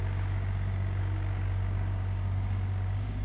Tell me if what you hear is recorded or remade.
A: remade